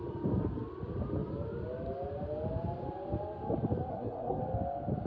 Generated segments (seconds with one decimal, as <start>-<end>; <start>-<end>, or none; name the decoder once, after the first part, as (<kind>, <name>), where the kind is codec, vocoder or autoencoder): 3.9-4.4 (codec, SNAC)